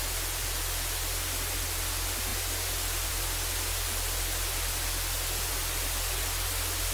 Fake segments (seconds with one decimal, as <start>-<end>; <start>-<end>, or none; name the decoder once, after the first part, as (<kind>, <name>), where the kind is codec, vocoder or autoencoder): none